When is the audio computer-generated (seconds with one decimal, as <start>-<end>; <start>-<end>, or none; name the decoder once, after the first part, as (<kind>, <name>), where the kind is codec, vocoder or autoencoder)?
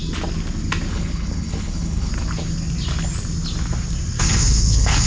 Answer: 0.9-2.1 (codec, HILCodec); 4.2-5.1